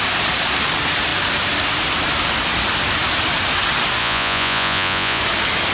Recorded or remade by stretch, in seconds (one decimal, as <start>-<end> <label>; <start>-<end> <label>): 0.0-4.0 recorded; 4.0-5.2 remade; 5.2-5.7 recorded